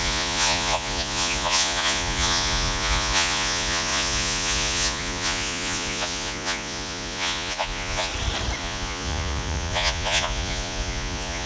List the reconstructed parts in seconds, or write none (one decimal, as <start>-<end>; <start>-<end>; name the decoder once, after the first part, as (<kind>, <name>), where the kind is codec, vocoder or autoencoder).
0.0-8.1 (vocoder, Vocos); 8.6-11.5